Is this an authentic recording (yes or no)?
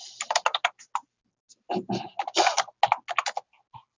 yes